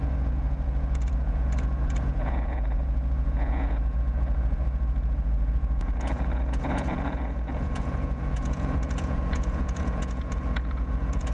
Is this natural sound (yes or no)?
no